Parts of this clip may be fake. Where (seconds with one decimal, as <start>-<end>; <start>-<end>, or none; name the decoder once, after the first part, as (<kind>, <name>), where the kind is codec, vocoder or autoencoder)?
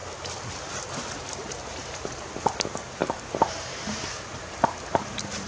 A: 1.8-2.5 (vocoder, BigVGAN v2); 3.0-5.5